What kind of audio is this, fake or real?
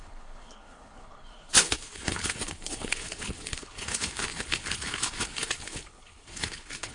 fake